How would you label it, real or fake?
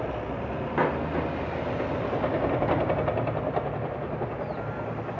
real